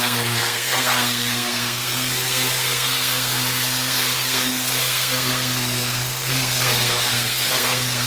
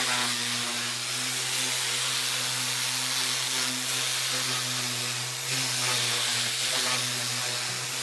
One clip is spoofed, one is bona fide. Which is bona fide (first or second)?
second